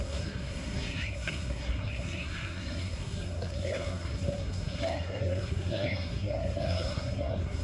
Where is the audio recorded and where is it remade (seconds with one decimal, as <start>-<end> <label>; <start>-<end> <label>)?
0.0-7.6 remade